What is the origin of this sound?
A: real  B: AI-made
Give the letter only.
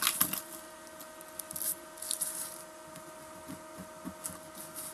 A